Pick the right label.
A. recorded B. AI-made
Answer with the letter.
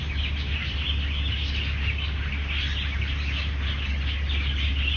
A